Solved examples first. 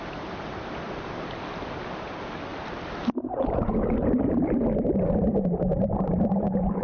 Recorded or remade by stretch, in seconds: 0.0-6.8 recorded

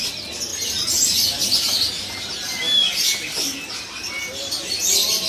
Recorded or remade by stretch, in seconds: 0.0-5.3 recorded

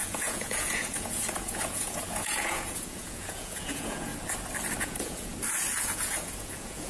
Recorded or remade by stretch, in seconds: 0.0-4.1 remade; 4.1-4.8 recorded; 4.8-5.3 remade; 5.3-5.8 recorded; 5.8-6.9 remade